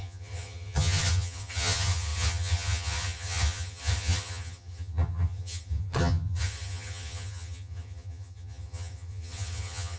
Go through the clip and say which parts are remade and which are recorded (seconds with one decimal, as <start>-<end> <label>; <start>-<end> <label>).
0.0-10.0 remade